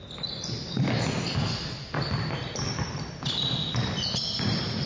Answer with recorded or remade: recorded